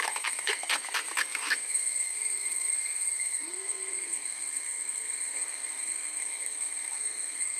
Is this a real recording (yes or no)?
no